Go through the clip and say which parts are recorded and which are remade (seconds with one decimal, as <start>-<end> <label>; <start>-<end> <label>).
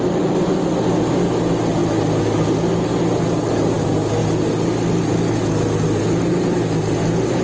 0.0-7.4 recorded